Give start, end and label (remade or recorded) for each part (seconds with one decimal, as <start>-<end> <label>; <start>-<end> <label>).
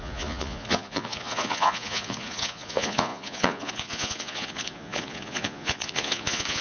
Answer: 0.0-6.6 remade